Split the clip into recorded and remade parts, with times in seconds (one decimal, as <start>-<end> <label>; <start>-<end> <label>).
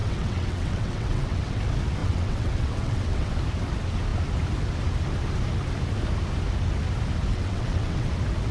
0.0-1.6 remade; 1.6-2.0 recorded; 2.0-3.3 remade; 3.3-7.3 recorded; 7.3-8.1 remade; 8.1-8.5 recorded